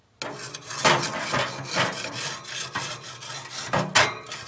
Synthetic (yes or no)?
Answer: no